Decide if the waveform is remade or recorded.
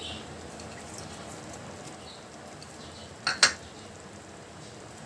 recorded